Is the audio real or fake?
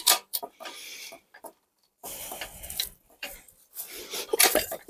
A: fake